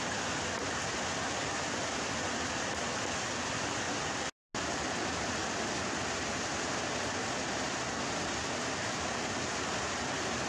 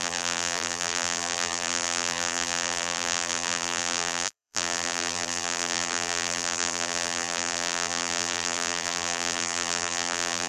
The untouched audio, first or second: first